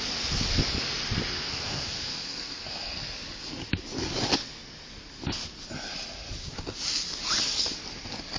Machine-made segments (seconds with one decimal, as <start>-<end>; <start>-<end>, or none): 1.3-2.6